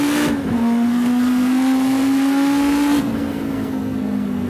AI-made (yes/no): yes